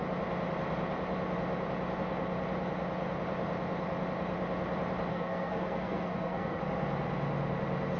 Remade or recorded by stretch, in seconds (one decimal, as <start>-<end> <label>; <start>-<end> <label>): 0.0-5.1 recorded; 5.1-6.6 remade; 6.6-8.0 recorded